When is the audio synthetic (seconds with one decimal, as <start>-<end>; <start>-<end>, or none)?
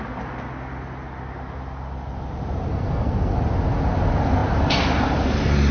2.7-3.4